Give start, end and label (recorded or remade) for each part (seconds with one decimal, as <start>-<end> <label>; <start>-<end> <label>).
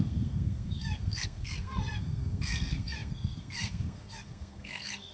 0.0-5.1 remade